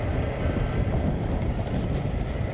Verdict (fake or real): real